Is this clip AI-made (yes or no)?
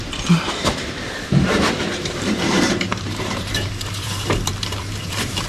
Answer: yes